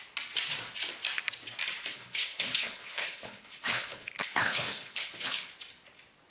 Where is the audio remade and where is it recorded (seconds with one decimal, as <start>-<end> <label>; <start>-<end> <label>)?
0.0-1.9 recorded; 1.9-5.5 remade; 5.5-6.3 recorded